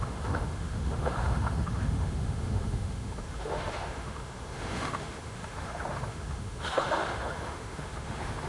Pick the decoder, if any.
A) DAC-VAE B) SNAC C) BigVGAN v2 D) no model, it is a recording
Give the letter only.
A